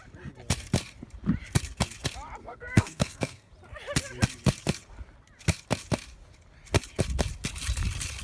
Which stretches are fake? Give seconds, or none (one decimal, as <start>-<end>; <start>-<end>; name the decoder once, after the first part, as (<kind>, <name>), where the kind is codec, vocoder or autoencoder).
2.4-3.5 (codec, SNAC)